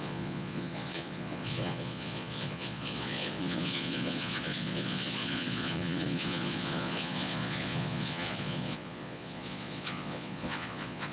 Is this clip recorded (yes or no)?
no